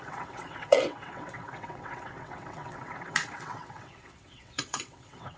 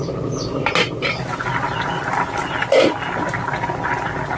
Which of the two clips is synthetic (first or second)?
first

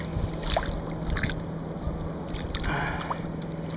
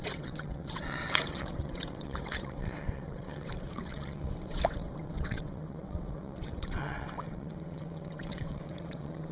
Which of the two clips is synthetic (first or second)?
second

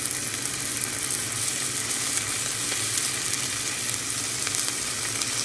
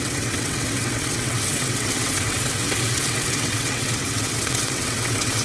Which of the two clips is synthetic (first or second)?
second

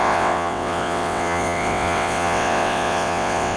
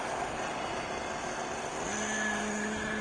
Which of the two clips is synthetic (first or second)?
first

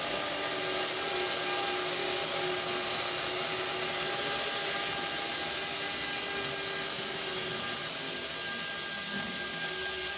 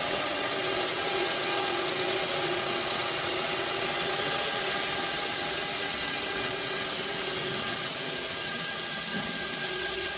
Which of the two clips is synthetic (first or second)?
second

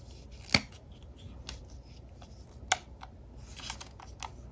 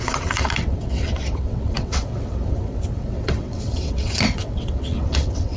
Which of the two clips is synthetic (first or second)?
second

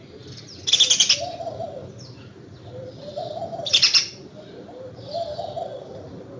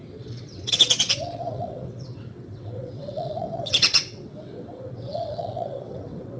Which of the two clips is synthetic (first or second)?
second